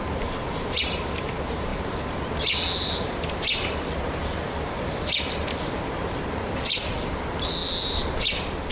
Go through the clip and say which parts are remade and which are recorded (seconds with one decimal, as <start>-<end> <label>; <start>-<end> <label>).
0.0-8.7 recorded